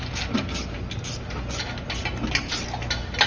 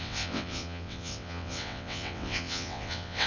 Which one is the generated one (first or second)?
second